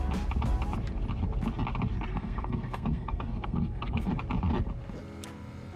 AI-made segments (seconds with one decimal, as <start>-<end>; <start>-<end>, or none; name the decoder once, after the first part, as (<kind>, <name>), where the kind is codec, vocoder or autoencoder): 2.1-4.1 (codec, SNAC)